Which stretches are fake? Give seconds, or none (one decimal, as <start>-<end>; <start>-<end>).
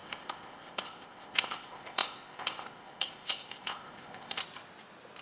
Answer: 0.0-4.4